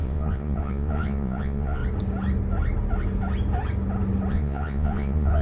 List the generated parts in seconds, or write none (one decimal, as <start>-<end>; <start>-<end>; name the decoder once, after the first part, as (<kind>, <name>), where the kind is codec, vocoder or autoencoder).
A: 0.0-1.8 (vocoder, Vocos); 4.3-5.4